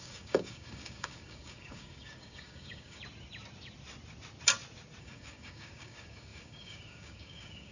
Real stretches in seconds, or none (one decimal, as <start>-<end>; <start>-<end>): 3.0-5.0